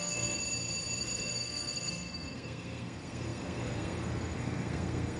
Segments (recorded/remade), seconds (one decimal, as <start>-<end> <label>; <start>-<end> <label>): 0.0-0.4 remade; 0.4-1.0 recorded; 1.0-5.2 remade